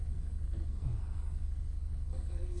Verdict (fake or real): fake